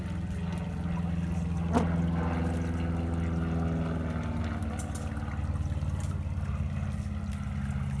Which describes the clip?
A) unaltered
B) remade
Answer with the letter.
A